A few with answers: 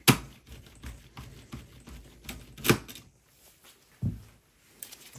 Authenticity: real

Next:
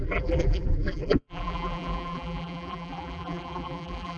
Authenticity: fake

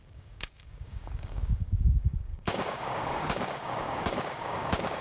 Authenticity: fake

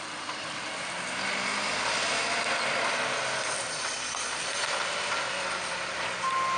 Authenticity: real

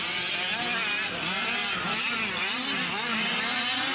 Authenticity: real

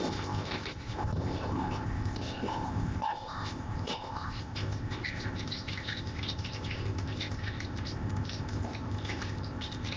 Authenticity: fake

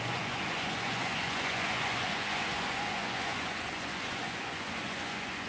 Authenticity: fake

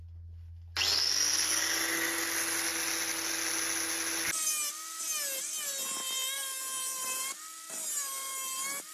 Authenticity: real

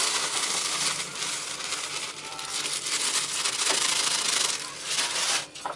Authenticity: real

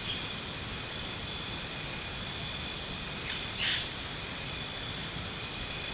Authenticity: real